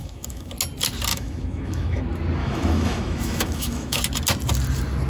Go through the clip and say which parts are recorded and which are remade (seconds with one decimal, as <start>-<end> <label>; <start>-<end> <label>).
0.0-0.5 remade; 0.5-1.1 recorded; 1.1-2.0 remade; 2.0-2.4 recorded; 2.4-4.0 remade; 4.0-5.1 recorded